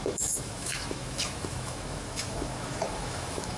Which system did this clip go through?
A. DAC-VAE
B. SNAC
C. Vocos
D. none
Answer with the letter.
A